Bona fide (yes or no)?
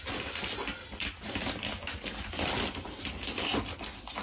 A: yes